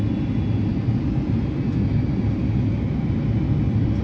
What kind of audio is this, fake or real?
real